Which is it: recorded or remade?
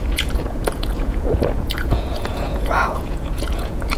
remade